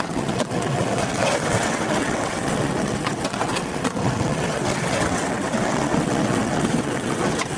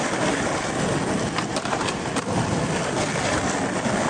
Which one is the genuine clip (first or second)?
second